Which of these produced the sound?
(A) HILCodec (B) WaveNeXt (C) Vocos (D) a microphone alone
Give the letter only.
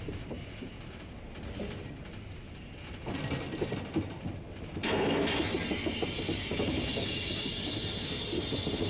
D